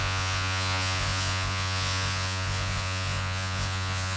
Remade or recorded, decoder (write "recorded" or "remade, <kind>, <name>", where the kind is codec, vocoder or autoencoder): remade, vocoder, Vocos